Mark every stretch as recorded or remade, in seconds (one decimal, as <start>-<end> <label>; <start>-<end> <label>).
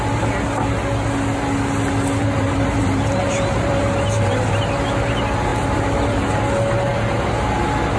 0.0-2.2 recorded; 2.2-4.6 remade; 4.6-5.5 recorded; 5.5-6.2 remade; 6.2-8.0 recorded